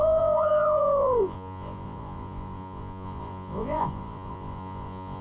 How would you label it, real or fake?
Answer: fake